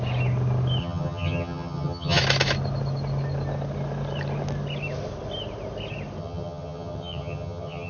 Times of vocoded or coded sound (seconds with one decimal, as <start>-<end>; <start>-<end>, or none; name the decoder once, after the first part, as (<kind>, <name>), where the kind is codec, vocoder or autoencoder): 0.8-2.2 (vocoder, HiFi-GAN); 6.2-7.9